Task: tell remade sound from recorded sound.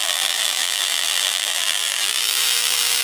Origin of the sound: remade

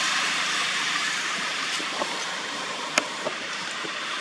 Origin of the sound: remade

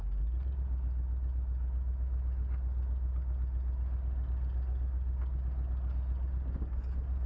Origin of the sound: recorded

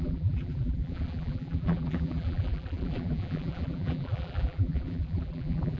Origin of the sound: remade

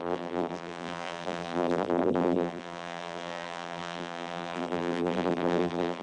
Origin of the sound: remade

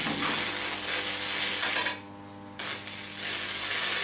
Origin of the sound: recorded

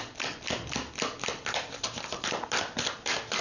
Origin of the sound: recorded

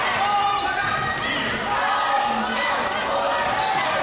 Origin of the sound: recorded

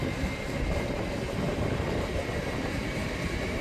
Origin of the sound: remade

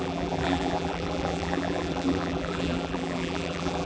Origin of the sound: remade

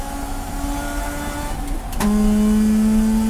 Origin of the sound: recorded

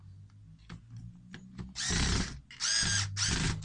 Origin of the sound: recorded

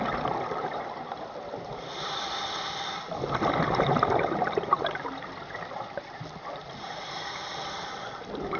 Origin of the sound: remade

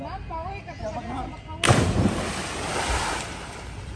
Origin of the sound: recorded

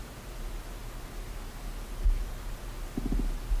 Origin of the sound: recorded